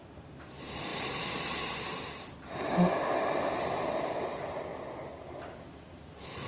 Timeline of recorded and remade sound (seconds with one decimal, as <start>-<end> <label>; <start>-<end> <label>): 0.0-0.5 remade; 0.5-6.5 recorded